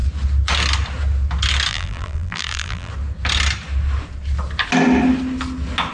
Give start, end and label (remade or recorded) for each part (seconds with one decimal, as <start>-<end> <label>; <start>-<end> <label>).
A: 0.0-1.7 recorded; 1.7-2.9 remade; 2.9-5.9 recorded